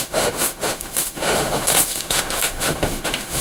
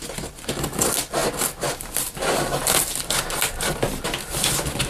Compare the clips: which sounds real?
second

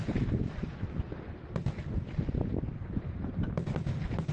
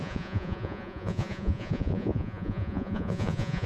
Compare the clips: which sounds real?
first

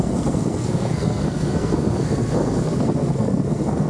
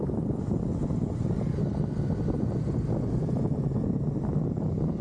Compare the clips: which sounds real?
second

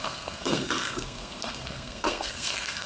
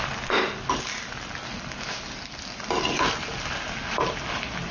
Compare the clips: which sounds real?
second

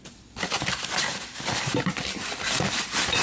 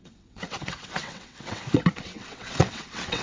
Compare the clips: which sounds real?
first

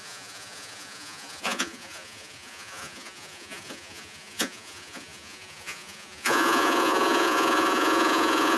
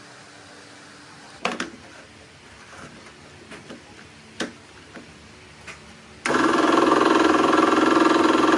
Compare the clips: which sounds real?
second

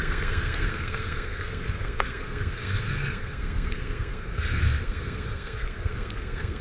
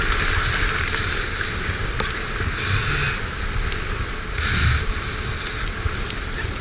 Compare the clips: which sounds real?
second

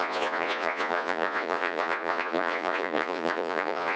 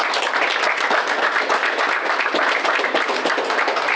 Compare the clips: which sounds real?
second